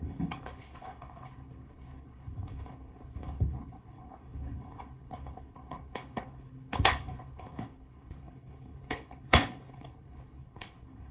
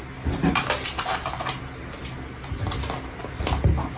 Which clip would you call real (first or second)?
second